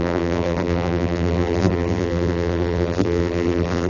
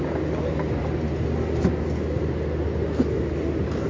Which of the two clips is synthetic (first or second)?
first